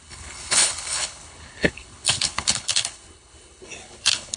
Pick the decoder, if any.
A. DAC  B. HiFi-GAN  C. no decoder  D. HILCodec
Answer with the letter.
D